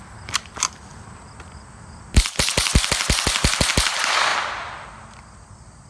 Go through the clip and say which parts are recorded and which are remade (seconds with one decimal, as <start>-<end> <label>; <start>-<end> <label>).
0.0-5.9 recorded